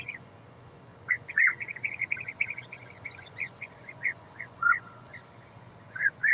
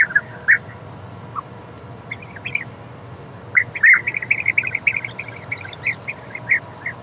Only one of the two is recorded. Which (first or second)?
second